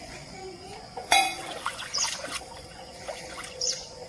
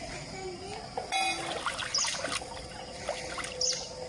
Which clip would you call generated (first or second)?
first